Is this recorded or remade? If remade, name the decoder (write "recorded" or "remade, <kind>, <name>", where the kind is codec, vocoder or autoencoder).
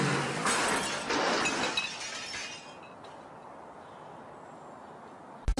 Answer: recorded